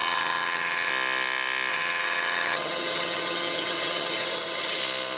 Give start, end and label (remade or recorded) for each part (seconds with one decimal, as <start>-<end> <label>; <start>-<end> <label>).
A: 0.0-0.9 remade; 0.9-1.7 recorded; 1.7-4.8 remade; 4.8-5.2 recorded